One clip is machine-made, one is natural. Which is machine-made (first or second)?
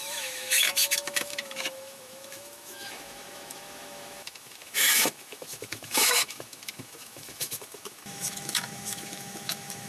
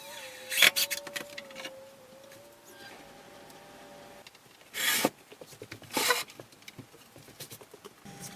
first